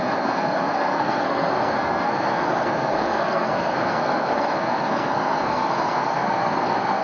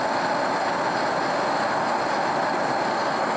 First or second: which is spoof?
first